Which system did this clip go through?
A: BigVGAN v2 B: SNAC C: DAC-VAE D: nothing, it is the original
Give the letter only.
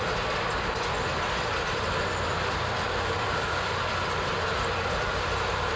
A